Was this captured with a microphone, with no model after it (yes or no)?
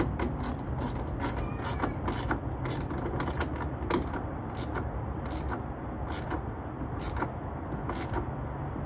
yes